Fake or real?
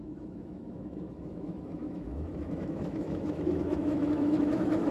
fake